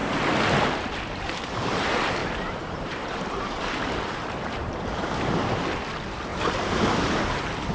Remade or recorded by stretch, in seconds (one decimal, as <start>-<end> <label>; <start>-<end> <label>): 0.0-2.2 recorded; 2.2-5.6 remade; 5.6-6.3 recorded; 6.3-7.1 remade; 7.1-7.7 recorded